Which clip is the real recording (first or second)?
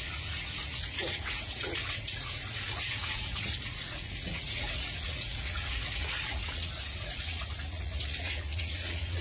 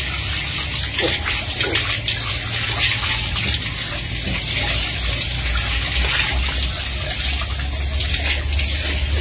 second